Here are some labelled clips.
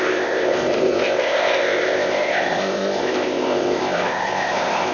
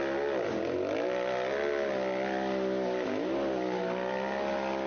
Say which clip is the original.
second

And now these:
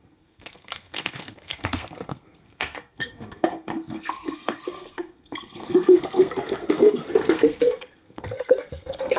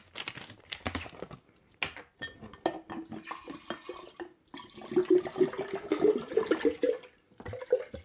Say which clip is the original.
second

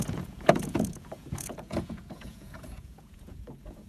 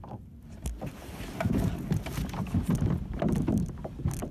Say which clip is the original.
second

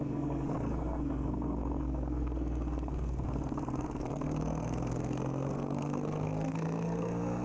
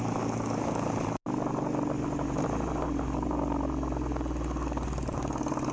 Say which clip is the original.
second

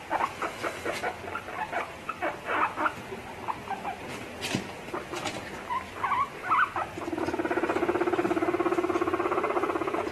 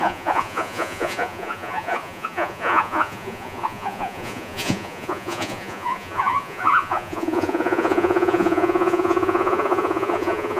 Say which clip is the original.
first